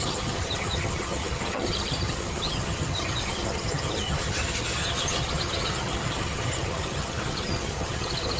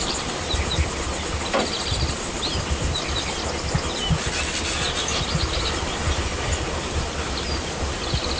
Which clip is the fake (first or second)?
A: first